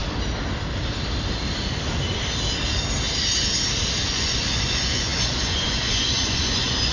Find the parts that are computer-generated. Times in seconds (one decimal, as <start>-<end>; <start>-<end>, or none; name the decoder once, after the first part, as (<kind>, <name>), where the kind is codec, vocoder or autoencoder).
4.1-6.9 (vocoder, Vocos)